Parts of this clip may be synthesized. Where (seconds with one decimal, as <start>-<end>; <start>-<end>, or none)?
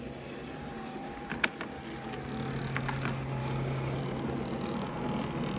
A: 3.4-4.0